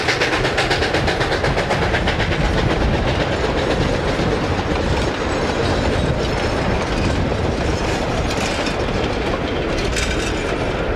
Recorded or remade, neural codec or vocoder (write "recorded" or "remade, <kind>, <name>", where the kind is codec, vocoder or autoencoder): recorded